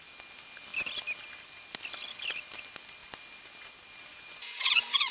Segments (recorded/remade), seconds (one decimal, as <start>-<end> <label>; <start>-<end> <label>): 0.0-4.1 recorded; 4.1-5.1 remade